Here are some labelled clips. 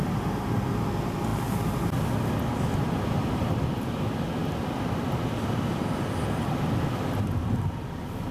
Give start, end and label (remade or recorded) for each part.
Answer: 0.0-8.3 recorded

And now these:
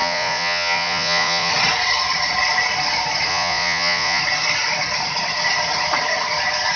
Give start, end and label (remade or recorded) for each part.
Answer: 0.0-1.5 remade; 1.5-3.3 recorded; 3.3-4.2 remade; 4.2-6.8 recorded

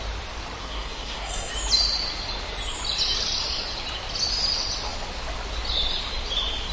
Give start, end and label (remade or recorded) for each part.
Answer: 0.0-0.6 recorded; 0.6-1.5 remade; 1.5-6.7 recorded

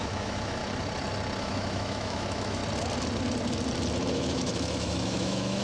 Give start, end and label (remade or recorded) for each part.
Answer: 0.0-0.6 remade; 0.6-1.4 recorded; 1.4-2.6 remade; 2.6-4.1 recorded; 4.1-5.6 remade

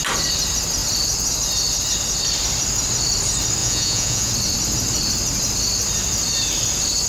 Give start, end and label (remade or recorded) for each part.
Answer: 0.0-3.6 recorded; 3.6-4.3 remade; 4.3-7.1 recorded